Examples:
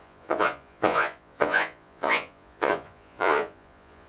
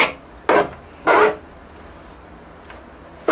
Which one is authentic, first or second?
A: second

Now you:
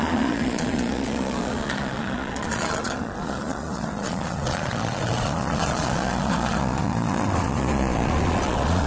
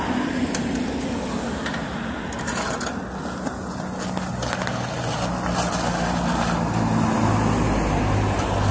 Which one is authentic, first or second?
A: second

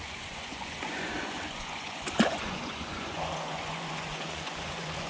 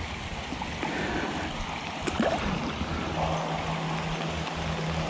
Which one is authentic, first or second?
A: second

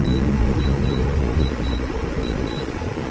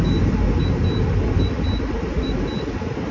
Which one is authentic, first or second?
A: second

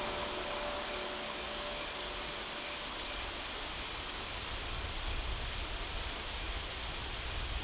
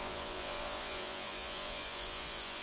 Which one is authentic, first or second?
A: first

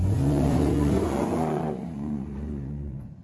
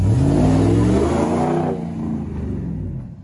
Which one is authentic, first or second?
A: second